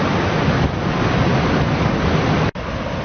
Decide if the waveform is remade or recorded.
recorded